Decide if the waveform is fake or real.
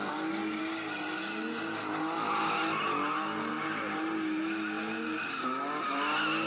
real